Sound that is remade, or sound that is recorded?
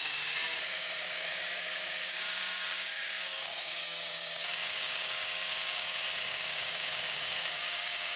remade